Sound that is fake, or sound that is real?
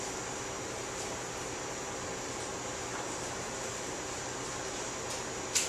real